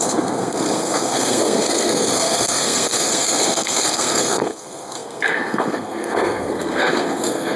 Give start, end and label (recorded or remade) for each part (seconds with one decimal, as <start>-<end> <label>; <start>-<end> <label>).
0.0-7.6 remade